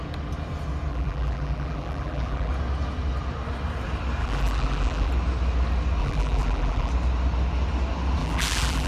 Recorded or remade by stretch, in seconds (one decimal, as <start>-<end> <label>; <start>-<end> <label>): 0.0-0.9 recorded; 0.9-2.5 remade; 2.5-4.2 recorded; 4.2-5.1 remade; 5.1-6.0 recorded; 6.0-6.9 remade; 6.9-8.2 recorded; 8.2-8.9 remade